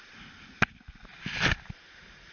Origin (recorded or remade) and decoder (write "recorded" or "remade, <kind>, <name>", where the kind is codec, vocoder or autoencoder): recorded